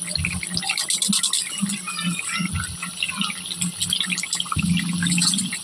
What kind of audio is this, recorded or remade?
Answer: recorded